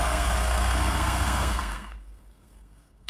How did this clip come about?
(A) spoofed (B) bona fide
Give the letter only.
A